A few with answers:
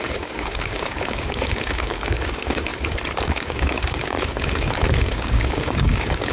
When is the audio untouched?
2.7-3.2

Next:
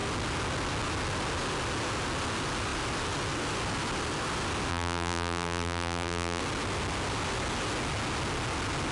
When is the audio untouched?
0.0-4.7; 6.4-8.9

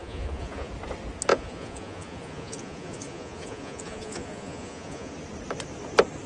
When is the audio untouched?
0.7-1.3; 5.1-6.3

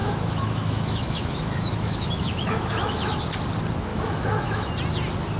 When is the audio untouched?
3.2-3.9; 4.7-5.4